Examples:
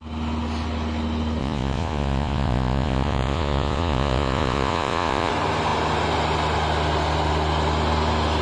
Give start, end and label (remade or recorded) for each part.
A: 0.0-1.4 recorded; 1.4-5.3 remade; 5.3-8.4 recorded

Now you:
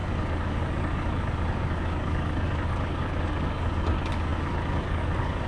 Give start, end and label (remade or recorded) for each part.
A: 0.0-5.5 remade

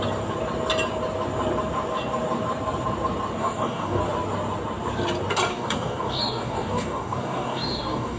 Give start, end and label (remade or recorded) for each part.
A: 0.0-3.4 recorded; 3.4-4.0 remade; 4.0-5.5 recorded; 5.5-8.2 remade

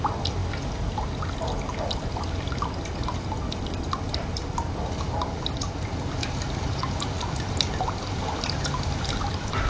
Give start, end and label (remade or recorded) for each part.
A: 0.0-4.3 recorded; 4.3-6.8 remade; 6.8-9.7 recorded

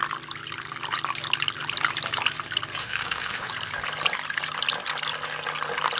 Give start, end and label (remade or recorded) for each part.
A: 0.0-2.8 recorded; 2.8-3.5 remade; 3.5-6.0 recorded

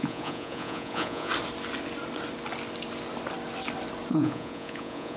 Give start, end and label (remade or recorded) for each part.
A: 0.0-1.3 remade; 1.3-4.1 recorded; 4.1-5.2 remade